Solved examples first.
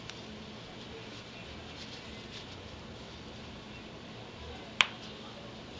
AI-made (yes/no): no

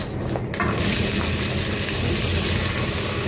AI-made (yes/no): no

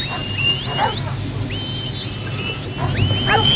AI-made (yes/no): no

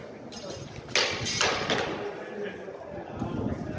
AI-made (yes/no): no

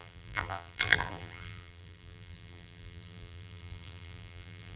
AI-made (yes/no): yes